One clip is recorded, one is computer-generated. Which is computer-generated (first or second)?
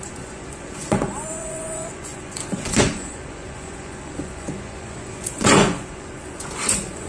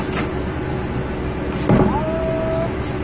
first